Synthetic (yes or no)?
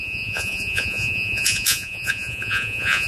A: yes